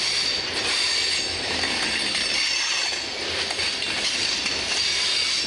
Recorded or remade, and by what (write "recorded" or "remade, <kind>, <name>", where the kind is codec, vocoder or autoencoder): recorded